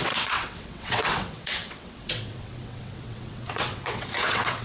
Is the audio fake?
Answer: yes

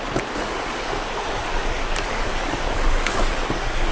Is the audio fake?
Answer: yes